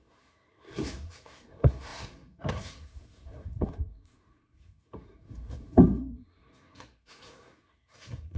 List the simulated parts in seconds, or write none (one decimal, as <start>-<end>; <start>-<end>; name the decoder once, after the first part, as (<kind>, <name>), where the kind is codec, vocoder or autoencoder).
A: 0.0-8.4 (codec, SNAC)